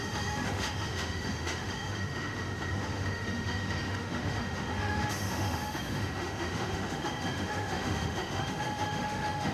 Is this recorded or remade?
remade